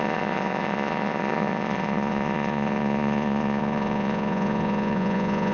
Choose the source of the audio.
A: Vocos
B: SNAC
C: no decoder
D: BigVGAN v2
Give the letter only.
A